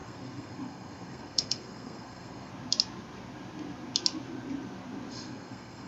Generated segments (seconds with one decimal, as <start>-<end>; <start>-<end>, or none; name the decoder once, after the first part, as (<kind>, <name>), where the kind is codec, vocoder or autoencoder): 0.0-2.5 (codec, SNAC); 5.1-5.9